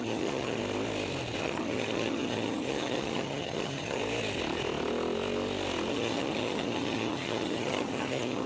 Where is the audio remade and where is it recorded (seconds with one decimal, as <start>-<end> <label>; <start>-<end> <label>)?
0.0-0.6 remade; 0.6-1.4 recorded; 1.4-4.0 remade; 4.0-5.9 recorded; 5.9-8.5 remade